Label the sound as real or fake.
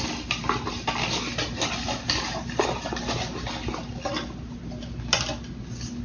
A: real